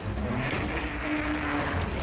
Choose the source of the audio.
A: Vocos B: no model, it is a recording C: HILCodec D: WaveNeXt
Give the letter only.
B